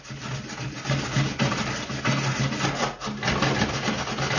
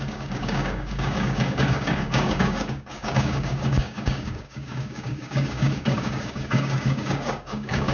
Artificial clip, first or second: second